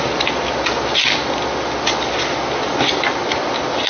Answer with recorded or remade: recorded